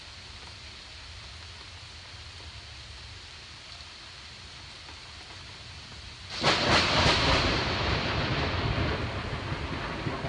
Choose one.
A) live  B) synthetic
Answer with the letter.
A